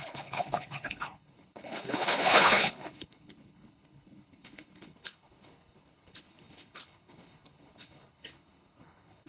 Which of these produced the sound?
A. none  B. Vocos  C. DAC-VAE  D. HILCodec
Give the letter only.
D